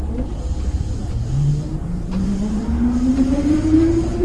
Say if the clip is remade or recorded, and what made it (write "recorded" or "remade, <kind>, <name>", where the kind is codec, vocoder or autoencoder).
remade, vocoder, BigVGAN v2